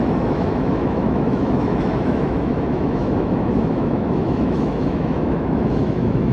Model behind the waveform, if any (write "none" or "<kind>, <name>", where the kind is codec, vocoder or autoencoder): autoencoder, DAC-VAE